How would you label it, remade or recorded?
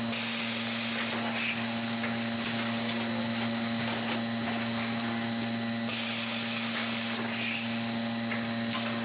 recorded